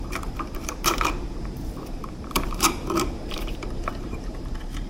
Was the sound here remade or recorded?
remade